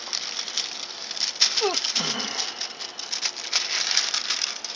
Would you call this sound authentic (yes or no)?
yes